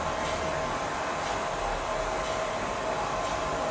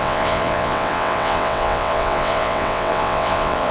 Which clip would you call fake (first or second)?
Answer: second